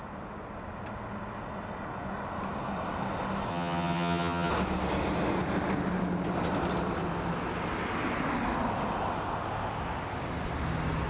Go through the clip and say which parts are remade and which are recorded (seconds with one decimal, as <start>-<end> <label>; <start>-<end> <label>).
0.0-3.5 recorded; 3.5-4.5 remade; 4.5-11.1 recorded